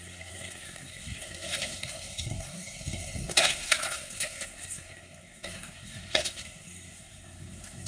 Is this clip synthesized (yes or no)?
yes